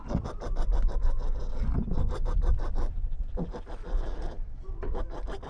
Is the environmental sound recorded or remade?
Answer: recorded